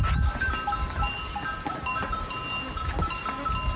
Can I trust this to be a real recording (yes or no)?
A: yes